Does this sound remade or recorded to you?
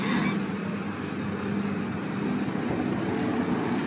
recorded